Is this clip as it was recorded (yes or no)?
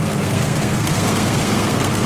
no